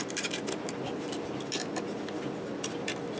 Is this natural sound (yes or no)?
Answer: yes